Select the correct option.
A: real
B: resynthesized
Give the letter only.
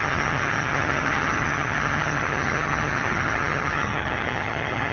B